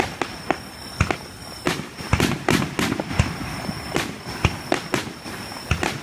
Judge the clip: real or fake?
real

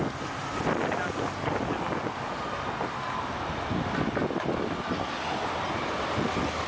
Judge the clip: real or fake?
real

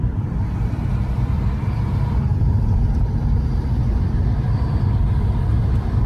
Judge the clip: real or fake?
fake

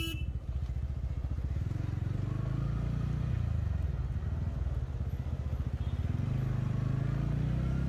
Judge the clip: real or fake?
real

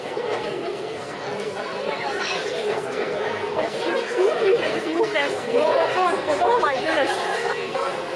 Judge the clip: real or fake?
fake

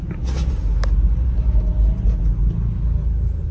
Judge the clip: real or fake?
real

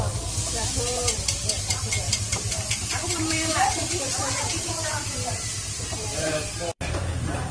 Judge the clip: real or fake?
fake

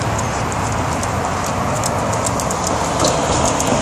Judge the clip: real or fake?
real